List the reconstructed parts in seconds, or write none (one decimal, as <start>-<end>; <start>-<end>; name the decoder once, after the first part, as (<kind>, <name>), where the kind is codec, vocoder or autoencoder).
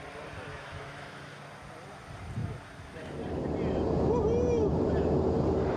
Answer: 0.5-1.4 (autoencoder, DAC-VAE)